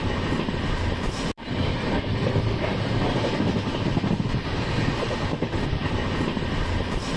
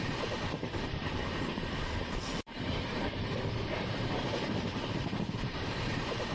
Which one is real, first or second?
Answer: first